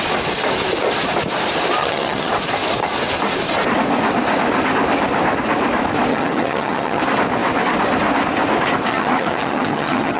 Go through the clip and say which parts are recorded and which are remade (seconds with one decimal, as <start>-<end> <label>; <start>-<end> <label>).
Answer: 0.0-1.8 recorded; 1.8-2.3 remade; 2.3-6.1 recorded; 6.1-7.0 remade; 7.0-8.9 recorded; 8.9-10.2 remade